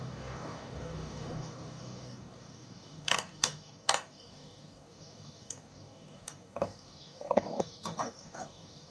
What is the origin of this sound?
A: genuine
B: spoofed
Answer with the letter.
B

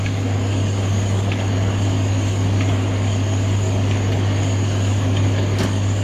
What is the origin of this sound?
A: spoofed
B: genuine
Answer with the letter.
A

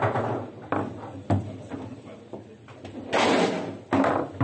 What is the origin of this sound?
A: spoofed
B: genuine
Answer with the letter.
B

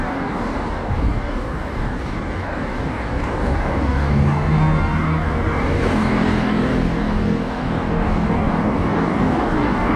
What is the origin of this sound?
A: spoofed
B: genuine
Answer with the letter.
A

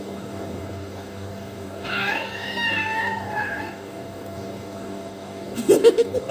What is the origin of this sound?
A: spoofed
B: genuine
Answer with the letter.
A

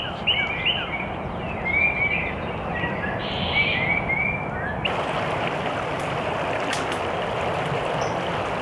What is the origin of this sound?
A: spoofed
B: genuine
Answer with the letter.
B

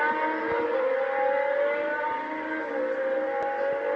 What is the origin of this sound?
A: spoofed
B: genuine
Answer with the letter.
B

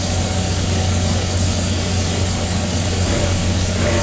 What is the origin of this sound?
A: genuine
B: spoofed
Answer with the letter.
B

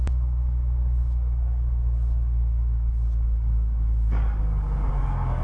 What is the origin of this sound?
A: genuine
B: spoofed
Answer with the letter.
B